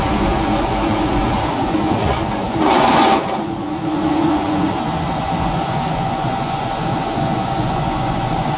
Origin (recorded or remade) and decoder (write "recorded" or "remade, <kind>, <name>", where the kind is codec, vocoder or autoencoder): remade, vocoder, Vocos